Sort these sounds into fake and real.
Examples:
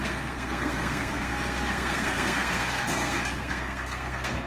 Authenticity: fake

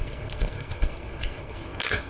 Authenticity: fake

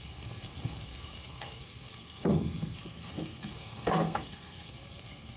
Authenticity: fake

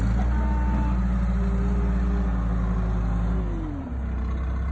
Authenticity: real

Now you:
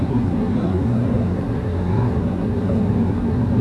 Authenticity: fake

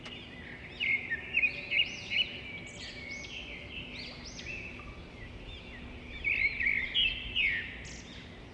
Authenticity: real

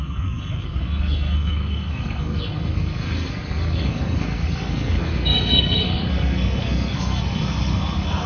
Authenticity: fake